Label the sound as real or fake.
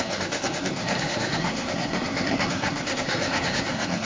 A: fake